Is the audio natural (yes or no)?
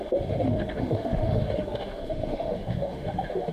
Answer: no